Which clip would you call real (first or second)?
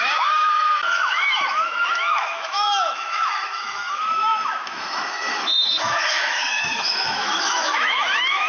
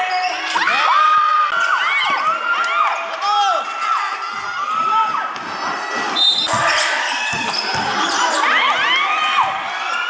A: second